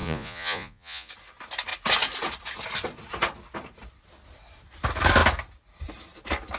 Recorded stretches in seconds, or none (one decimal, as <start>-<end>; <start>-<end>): 1.1-6.6